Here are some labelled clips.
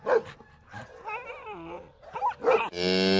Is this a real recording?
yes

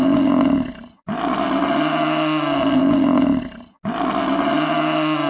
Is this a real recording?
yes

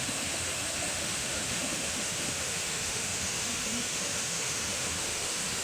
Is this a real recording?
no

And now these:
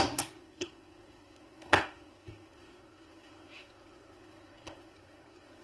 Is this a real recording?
no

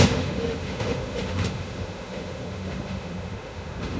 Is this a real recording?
no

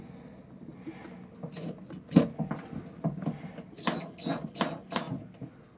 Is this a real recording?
yes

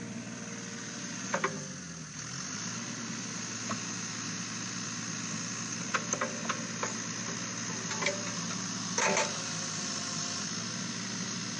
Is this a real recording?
yes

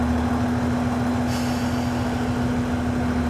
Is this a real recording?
yes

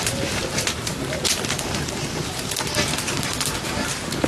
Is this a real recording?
no